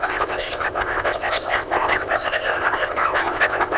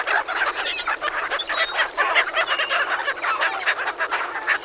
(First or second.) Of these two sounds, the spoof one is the first